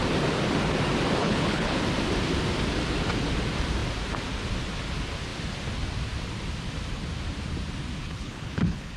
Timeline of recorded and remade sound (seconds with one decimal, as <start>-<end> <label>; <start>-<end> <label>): 0.0-1.2 recorded; 1.2-1.8 remade; 1.8-8.0 recorded; 8.0-9.0 remade